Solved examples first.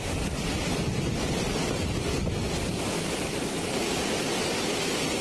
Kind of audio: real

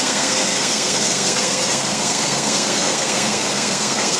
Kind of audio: fake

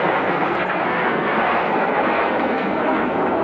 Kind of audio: fake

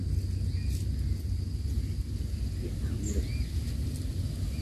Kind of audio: real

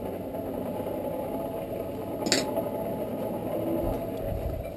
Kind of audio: real